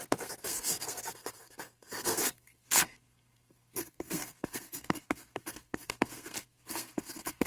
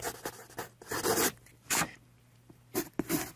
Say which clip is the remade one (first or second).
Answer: first